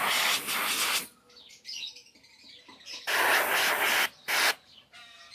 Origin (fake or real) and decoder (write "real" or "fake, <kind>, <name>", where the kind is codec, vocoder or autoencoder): real